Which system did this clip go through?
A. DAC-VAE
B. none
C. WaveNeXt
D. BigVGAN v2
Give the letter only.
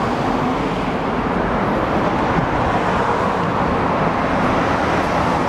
D